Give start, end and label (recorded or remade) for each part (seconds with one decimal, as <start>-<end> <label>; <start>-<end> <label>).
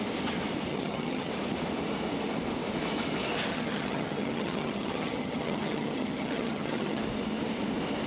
0.0-0.7 recorded; 0.7-1.3 remade; 1.3-3.5 recorded; 3.5-7.0 remade; 7.0-8.1 recorded